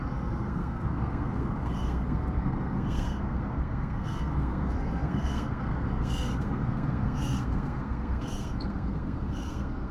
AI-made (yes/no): yes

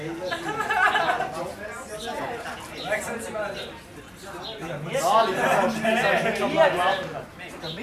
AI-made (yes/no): no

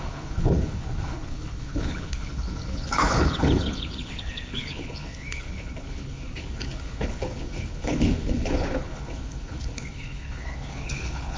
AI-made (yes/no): yes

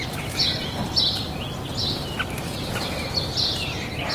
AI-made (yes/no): no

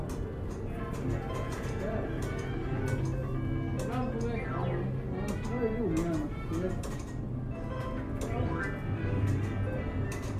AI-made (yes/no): no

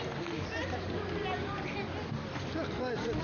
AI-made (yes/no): no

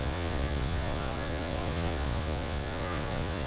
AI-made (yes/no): yes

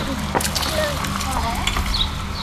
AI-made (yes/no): no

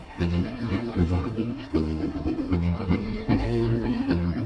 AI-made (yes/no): yes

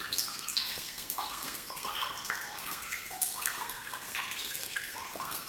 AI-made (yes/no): yes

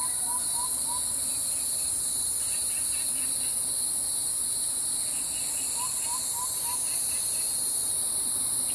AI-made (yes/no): yes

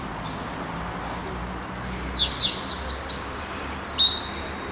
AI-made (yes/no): no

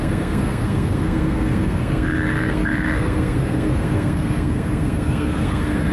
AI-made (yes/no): yes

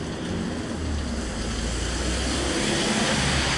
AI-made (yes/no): no